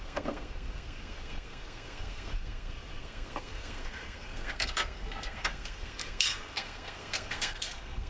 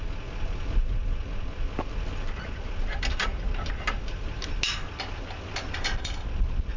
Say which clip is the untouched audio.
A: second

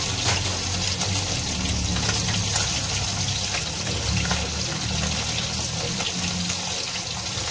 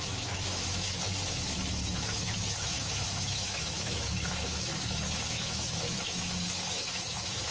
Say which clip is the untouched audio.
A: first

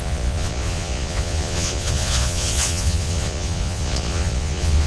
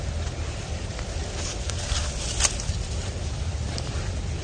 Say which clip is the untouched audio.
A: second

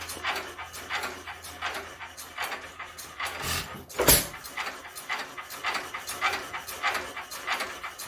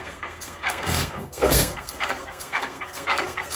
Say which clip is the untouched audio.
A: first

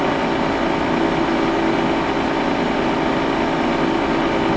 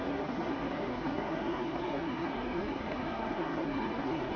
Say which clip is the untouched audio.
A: first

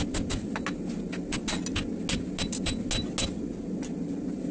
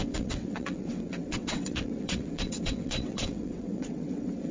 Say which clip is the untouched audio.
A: first